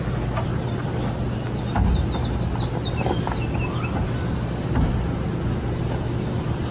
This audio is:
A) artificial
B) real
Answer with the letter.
B